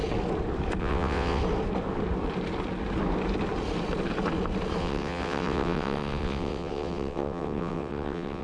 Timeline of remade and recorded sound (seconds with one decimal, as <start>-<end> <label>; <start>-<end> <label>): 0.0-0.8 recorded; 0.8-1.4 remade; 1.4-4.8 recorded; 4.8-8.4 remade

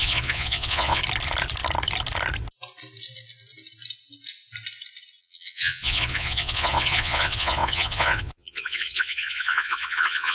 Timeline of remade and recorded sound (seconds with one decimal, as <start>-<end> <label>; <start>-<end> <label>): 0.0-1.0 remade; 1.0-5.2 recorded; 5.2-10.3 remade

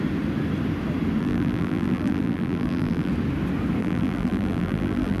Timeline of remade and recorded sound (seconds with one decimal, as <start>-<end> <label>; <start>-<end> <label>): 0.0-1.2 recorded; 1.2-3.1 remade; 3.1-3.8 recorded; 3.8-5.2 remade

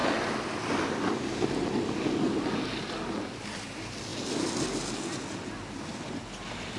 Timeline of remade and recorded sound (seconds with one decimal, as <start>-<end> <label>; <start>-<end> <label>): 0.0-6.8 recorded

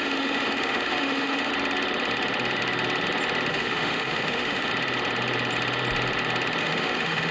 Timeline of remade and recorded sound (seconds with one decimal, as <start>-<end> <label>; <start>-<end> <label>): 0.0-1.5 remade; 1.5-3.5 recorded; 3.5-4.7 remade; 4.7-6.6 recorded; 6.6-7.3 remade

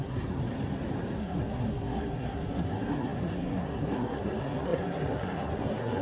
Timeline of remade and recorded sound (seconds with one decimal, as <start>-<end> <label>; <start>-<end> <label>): 0.0-0.4 remade; 0.4-1.2 recorded; 1.2-6.0 remade